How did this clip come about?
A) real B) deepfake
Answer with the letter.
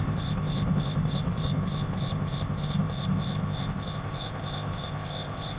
B